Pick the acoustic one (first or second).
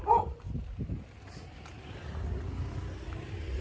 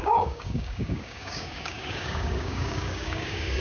first